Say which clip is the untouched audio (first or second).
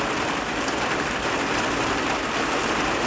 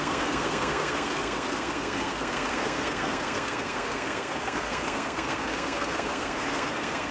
first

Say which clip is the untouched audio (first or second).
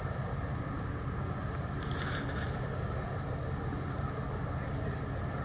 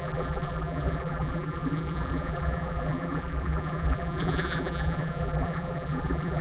first